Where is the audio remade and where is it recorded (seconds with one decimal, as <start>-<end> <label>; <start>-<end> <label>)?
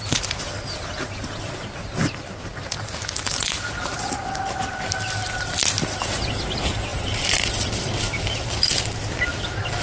0.0-9.8 recorded